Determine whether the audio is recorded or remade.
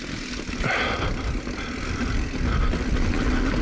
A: recorded